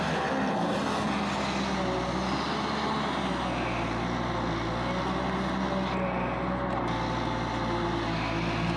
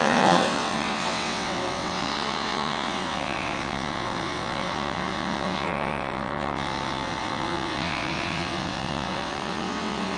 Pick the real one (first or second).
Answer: first